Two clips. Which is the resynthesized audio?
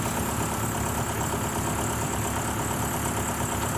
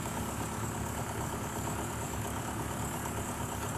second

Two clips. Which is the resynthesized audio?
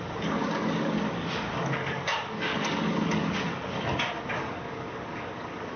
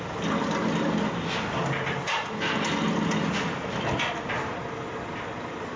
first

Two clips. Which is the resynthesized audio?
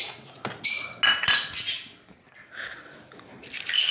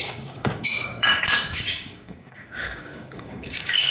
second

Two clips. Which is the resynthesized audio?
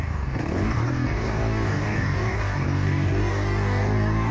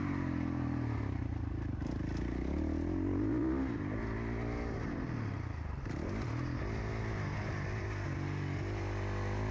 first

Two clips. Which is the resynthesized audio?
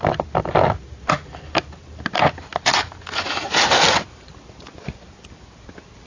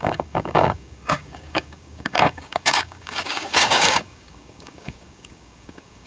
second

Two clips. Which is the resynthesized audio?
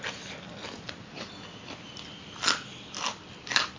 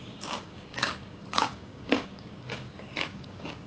second